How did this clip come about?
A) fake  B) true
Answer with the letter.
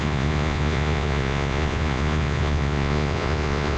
A